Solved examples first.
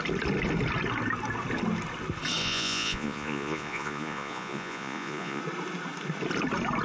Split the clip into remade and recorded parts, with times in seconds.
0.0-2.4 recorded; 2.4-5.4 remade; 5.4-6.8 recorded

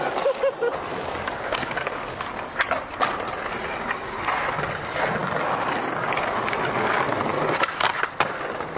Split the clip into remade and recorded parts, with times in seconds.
0.0-0.9 recorded; 0.9-2.2 remade; 2.2-8.8 recorded

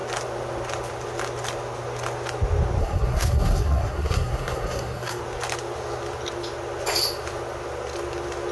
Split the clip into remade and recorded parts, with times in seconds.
0.0-2.8 recorded; 2.8-5.2 remade; 5.2-8.5 recorded

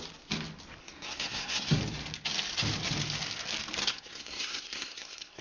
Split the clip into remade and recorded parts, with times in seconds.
0.0-0.8 recorded; 0.8-1.8 remade; 1.8-3.8 recorded; 3.8-5.4 remade

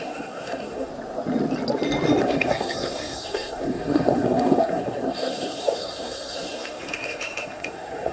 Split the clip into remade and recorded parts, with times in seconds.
0.0-0.9 remade; 0.9-2.2 recorded; 2.2-8.1 remade

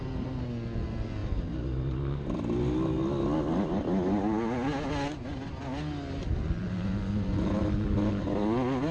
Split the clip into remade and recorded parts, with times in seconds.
0.0-8.9 recorded

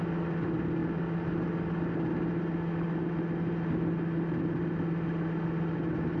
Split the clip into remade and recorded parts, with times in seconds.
0.0-6.2 recorded